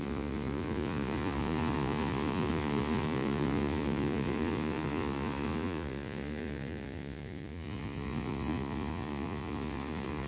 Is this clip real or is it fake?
fake